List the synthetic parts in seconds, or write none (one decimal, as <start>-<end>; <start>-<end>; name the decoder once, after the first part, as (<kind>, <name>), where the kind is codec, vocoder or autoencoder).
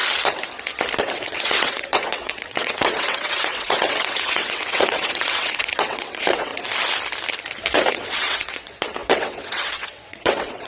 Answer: 1.0-6.5 (vocoder, WaveNeXt); 7.9-10.7